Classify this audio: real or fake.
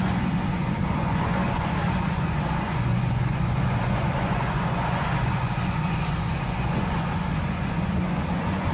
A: fake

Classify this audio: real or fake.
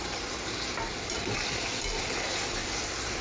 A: real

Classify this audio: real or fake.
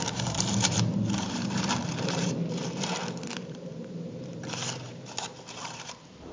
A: fake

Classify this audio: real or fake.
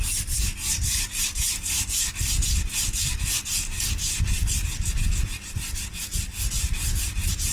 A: fake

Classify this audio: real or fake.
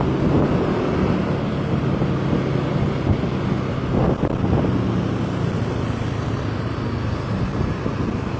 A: real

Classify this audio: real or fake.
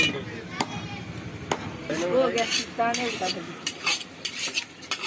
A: real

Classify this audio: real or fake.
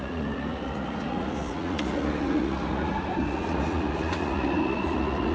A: fake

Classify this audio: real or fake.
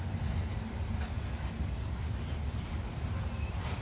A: fake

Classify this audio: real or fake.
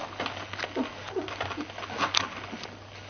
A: real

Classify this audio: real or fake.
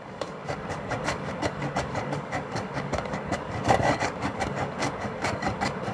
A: fake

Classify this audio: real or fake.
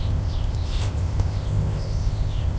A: fake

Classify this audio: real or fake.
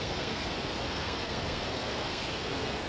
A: fake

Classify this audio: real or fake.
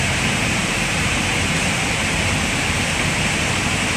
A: fake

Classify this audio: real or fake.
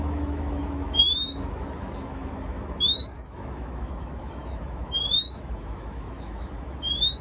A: fake